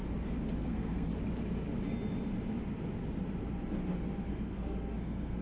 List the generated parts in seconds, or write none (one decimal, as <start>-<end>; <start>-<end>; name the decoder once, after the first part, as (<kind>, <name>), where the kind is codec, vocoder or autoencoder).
0.6-1.1 (codec, SNAC); 4.3-5.4